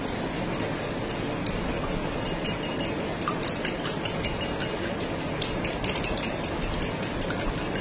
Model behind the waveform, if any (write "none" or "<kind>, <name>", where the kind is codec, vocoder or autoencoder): none